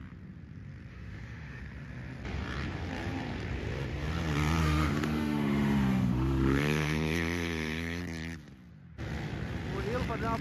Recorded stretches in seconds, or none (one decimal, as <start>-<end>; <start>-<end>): 0.0-0.9; 1.6-4.6; 8.0-10.4